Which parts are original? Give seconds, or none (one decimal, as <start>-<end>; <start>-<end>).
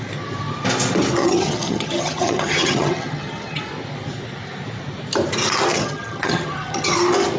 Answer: 0.0-1.2; 3.6-5.7; 6.9-7.4